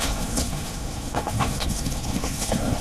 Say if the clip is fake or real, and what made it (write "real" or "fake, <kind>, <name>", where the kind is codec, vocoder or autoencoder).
fake, codec, SNAC